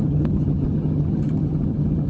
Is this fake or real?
fake